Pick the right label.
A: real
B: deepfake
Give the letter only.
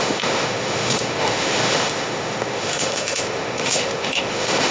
B